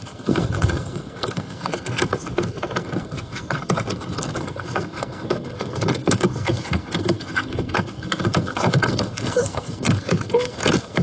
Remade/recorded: remade